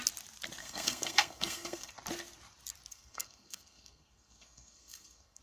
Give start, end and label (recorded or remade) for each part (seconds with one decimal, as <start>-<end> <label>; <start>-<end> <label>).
0.0-0.6 recorded; 0.6-1.9 remade; 1.9-2.9 recorded; 2.9-5.4 remade